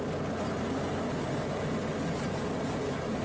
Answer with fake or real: real